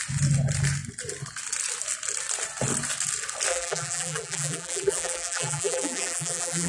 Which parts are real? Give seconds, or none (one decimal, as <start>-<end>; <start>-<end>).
0.0-3.5